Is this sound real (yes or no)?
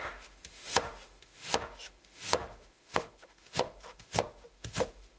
no